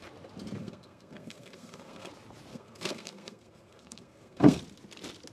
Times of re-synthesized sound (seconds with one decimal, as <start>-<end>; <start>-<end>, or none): 0.6-2.1; 2.5-4.6